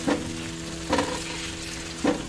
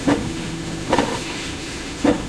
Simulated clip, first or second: second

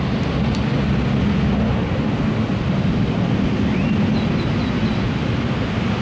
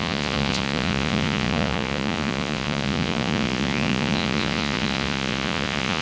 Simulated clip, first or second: second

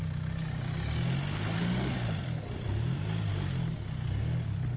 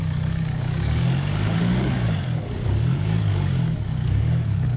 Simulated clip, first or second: second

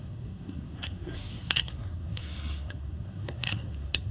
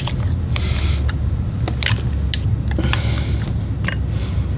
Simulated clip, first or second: first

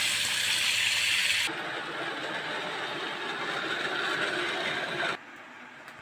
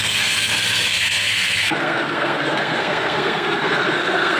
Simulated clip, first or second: second